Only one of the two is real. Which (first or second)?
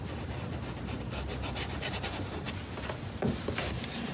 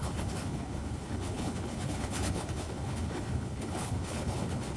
first